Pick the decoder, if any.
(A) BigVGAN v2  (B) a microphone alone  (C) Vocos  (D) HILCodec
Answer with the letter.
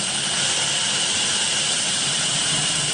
B